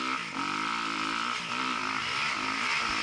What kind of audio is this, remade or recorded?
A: recorded